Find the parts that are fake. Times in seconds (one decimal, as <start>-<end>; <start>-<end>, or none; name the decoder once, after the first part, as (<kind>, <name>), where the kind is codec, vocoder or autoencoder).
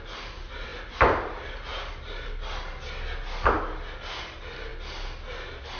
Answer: none